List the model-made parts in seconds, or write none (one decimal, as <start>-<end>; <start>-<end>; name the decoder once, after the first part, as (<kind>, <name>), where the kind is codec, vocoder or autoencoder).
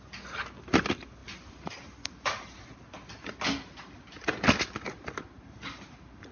1.2-1.8 (vocoder, BigVGAN v2)